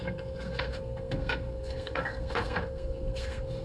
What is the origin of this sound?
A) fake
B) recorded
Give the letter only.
A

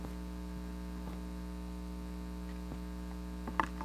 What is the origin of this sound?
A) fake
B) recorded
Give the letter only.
B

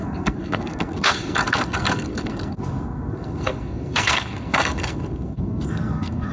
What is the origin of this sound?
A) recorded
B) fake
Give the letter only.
B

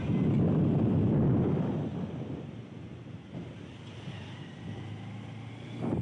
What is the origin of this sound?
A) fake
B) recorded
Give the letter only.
B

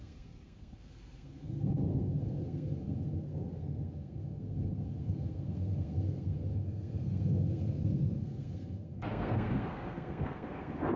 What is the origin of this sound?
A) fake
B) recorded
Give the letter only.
A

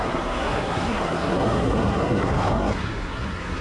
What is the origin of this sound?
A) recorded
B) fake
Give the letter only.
B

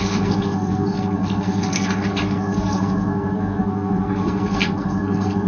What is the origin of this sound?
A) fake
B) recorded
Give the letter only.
A